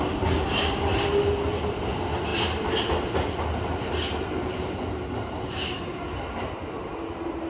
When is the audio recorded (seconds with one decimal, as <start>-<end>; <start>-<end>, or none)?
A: 0.0-7.5